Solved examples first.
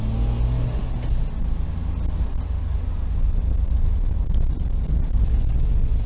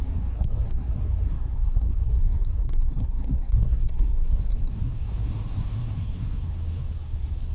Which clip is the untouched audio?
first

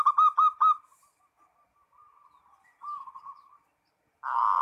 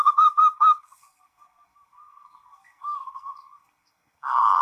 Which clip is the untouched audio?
first